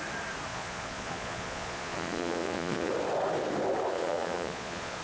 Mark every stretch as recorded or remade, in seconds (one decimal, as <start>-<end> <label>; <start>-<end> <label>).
0.0-0.5 recorded; 0.5-2.9 remade; 2.9-3.9 recorded; 3.9-5.0 remade